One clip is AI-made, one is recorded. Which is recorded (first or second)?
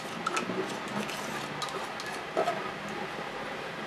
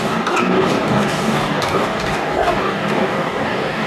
first